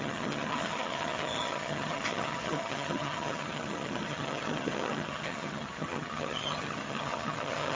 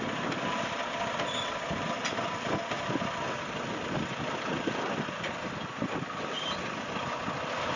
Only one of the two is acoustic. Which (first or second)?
second